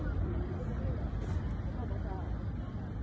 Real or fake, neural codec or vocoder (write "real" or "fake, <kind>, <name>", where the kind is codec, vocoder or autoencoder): real